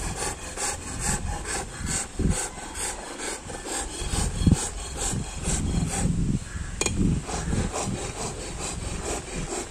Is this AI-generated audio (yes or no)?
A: no